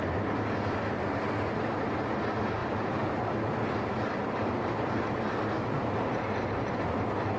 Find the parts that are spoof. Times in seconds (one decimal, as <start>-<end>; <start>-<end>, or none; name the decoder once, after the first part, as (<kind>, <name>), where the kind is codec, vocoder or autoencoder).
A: 2.6-3.3 (vocoder, BigVGAN v2); 4.2-6.7